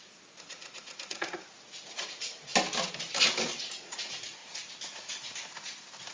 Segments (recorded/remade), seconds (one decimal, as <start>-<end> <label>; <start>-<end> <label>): 0.0-2.5 remade; 2.5-3.8 recorded; 3.8-4.4 remade; 4.4-6.1 recorded